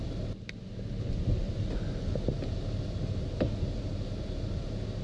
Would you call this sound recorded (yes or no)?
yes